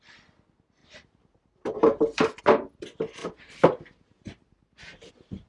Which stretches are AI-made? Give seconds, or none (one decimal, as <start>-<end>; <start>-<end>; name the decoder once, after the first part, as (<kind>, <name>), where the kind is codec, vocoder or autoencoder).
0.8-2.4 (vocoder, BigVGAN v2); 3.2-5.1

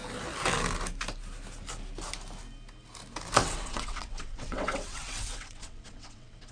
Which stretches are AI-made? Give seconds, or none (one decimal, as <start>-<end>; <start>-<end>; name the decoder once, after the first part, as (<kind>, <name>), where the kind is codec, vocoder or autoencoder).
3.4-6.5 (vocoder, WaveNeXt)